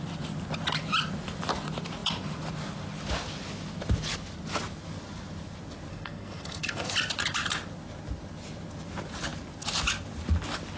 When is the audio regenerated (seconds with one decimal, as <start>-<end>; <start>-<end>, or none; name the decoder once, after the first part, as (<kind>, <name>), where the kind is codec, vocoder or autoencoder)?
5.9-6.9 (codec, SNAC)

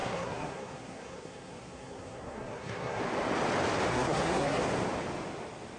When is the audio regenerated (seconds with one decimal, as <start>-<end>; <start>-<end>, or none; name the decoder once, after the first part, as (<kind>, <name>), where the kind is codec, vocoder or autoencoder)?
0.0-3.0 (codec, SNAC); 3.9-4.6

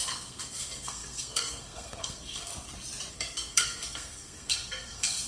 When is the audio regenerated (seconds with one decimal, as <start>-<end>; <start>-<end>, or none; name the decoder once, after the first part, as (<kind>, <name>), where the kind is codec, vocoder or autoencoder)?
0.0-2.5 (codec, SNAC); 3.1-5.3

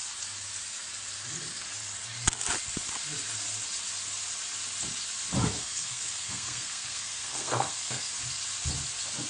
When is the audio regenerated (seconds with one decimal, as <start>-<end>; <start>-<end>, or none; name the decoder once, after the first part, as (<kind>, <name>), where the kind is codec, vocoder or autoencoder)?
5.6-8.1 (codec, SNAC)